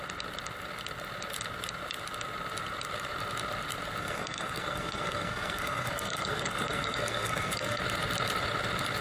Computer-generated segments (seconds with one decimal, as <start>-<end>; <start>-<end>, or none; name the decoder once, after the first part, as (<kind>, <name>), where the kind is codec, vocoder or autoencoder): 4.0-7.8 (codec, SNAC)